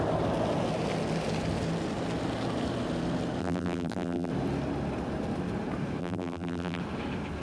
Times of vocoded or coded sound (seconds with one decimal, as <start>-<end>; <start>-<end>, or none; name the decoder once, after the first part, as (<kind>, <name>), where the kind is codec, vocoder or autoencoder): 3.4-4.3 (vocoder, BigVGAN v2); 6.0-6.8